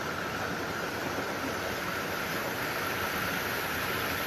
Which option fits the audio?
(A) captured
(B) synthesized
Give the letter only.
A